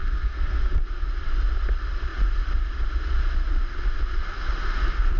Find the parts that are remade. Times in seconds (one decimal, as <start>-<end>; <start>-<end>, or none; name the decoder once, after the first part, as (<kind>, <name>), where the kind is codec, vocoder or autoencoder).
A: 0.0-0.7 (codec, SNAC)